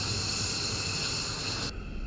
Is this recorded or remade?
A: recorded